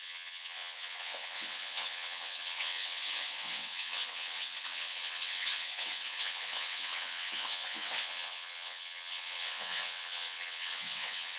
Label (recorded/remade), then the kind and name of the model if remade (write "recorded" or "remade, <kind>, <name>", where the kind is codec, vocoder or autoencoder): remade, vocoder, WaveNeXt